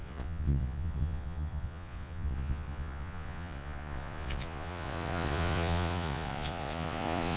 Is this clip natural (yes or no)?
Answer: no